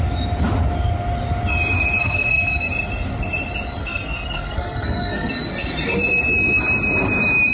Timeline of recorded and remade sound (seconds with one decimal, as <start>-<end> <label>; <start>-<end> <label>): 0.0-2.0 recorded; 2.0-2.7 remade; 2.7-3.8 recorded; 3.8-5.3 remade; 5.3-7.5 recorded